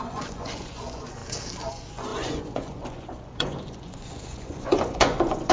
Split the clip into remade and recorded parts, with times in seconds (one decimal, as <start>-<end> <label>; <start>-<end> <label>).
0.0-1.2 remade; 1.2-1.7 recorded; 1.7-5.5 remade